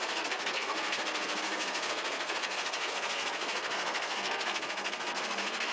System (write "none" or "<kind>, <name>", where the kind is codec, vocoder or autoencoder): codec, SNAC